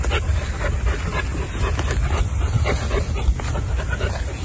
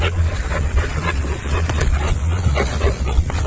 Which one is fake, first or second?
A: second